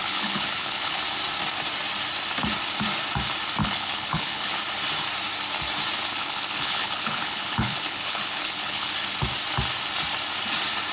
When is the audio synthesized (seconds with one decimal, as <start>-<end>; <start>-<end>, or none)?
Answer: 0.0-1.0; 3.6-4.6; 6.1-8.9

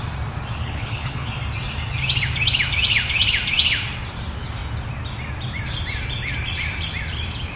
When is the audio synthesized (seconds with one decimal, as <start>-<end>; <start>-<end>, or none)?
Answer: 0.6-1.3

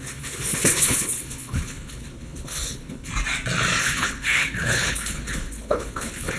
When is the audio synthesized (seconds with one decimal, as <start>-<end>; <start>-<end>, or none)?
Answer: 0.0-3.1; 3.8-6.4

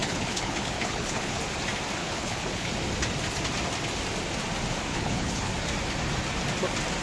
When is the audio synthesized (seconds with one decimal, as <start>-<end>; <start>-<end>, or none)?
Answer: 0.0-1.4; 2.0-2.7; 4.9-5.5

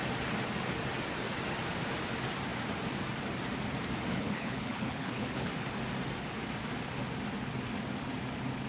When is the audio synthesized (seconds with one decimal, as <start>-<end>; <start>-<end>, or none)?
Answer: 4.1-5.5

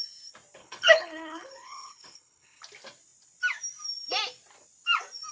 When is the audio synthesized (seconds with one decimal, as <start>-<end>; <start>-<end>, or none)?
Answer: 0.6-2.6

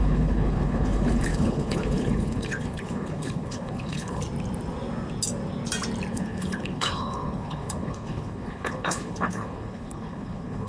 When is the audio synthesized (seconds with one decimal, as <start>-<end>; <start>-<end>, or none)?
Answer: 0.0-4.2; 6.1-10.7